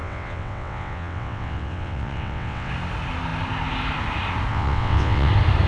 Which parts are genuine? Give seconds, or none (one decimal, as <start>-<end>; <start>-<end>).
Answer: 2.7-4.5; 5.3-5.7